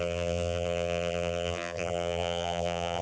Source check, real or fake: fake